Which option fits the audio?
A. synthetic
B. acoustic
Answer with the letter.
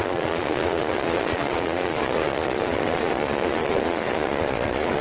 A